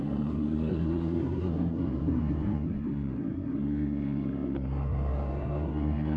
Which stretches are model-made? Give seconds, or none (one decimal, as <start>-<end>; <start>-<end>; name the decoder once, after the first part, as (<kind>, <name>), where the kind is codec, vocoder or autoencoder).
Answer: 0.0-6.2 (codec, SNAC)